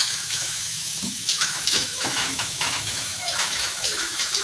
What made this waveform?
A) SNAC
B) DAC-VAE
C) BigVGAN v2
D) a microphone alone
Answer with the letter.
B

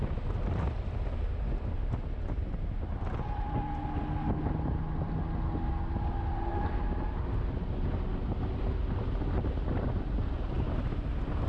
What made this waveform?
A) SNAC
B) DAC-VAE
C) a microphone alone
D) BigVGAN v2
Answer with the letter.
C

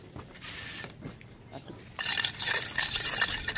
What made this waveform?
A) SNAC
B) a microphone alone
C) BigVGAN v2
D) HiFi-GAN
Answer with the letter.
B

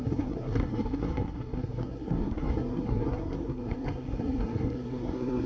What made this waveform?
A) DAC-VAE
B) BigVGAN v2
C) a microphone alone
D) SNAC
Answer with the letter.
D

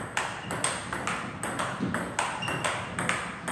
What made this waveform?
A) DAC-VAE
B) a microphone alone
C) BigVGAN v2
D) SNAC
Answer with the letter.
B